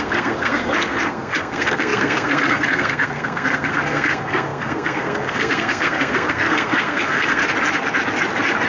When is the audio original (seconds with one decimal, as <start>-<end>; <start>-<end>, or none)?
7.4-8.7